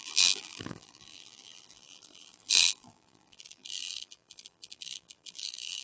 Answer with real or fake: fake